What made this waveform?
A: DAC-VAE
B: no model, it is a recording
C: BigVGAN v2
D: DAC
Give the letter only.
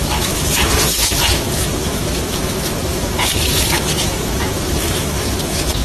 A